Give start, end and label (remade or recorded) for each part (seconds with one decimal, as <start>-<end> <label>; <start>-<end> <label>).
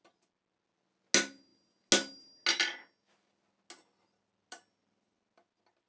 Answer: 0.0-5.9 recorded